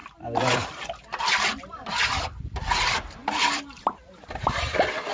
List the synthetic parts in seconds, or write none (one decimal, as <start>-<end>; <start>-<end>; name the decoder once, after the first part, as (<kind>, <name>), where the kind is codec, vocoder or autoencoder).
0.0-5.1 (vocoder, BigVGAN v2)